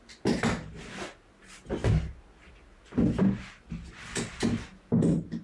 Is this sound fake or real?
real